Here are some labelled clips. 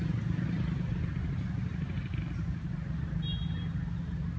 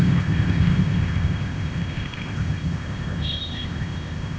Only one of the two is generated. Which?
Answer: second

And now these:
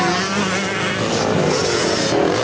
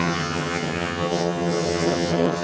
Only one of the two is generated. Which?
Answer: second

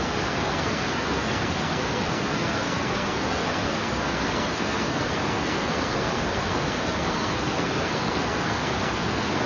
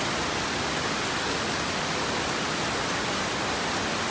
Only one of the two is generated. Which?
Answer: first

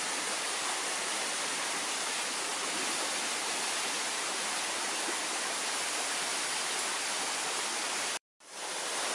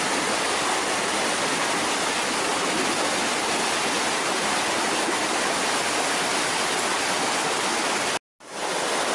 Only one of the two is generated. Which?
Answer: first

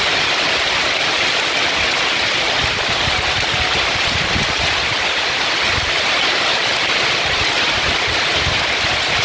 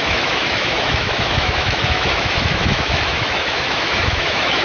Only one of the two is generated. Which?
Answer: second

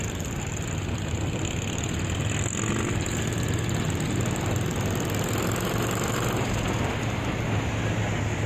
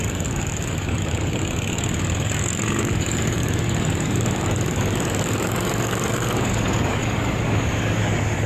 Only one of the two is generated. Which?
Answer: second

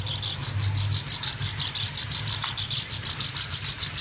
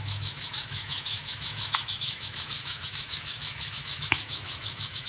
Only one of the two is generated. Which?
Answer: second